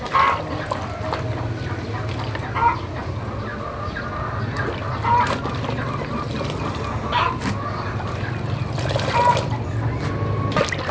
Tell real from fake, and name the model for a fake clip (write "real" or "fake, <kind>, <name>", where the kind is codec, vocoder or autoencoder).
real